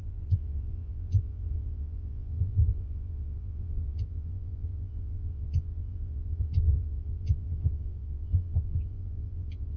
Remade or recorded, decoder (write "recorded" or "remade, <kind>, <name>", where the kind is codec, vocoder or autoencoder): remade, vocoder, Vocos